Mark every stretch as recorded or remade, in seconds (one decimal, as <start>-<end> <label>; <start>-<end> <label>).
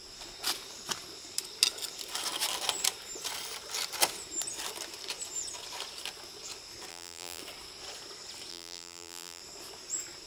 0.0-6.9 recorded; 6.9-7.4 remade; 7.4-8.5 recorded; 8.5-9.4 remade; 9.4-10.3 recorded